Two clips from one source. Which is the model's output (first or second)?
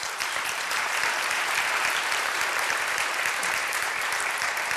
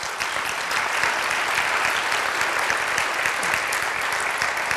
first